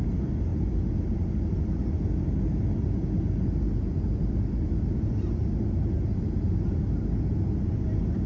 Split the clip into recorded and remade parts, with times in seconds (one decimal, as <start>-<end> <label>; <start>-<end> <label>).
0.0-6.1 recorded; 6.1-6.8 remade; 6.8-8.3 recorded

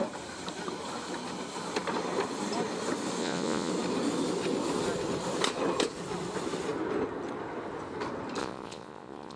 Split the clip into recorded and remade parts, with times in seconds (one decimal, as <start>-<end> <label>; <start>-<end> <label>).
0.0-3.2 recorded; 3.2-3.7 remade; 3.7-8.4 recorded; 8.4-9.4 remade

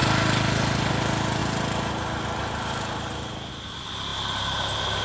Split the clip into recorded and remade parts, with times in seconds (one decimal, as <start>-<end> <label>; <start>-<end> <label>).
0.0-5.0 recorded